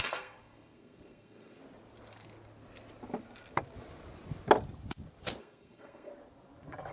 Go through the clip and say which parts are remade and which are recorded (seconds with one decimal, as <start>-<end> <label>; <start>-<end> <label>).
0.0-1.6 remade; 1.6-5.4 recorded; 5.4-6.1 remade; 6.1-6.9 recorded